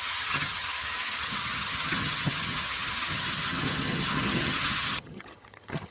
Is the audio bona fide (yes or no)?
no